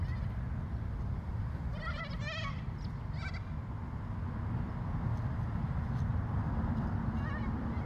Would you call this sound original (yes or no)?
yes